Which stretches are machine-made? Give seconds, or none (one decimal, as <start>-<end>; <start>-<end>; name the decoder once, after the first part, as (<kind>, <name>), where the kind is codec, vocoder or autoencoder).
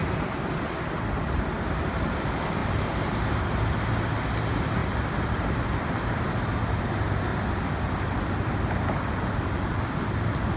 0.0-1.1 (vocoder, BigVGAN v2); 2.6-3.2; 7.3-7.9